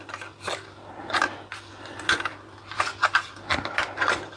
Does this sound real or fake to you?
real